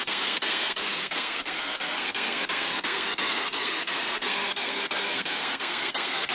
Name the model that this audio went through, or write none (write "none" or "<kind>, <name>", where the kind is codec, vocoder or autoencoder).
codec, SNAC